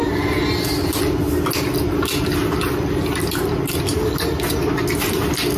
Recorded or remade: recorded